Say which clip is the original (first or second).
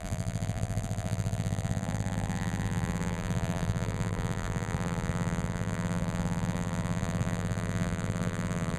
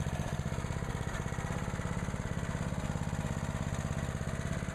second